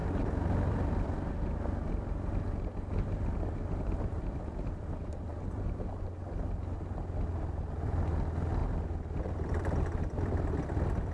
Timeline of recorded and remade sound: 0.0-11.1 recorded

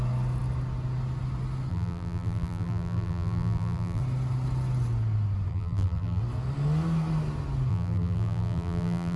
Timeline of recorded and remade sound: 0.0-1.7 recorded; 1.7-4.0 remade; 4.0-5.5 recorded; 5.5-6.2 remade; 6.2-7.7 recorded; 7.7-9.2 remade

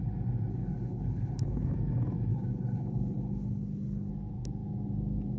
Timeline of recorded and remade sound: 0.0-0.5 recorded; 0.5-1.7 remade; 1.7-2.3 recorded; 2.3-4.1 remade; 4.1-5.4 recorded

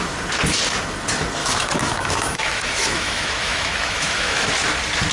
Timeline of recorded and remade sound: 0.0-1.4 recorded; 1.4-4.5 remade; 4.5-5.1 recorded